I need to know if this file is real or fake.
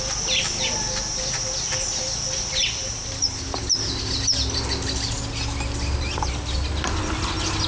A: real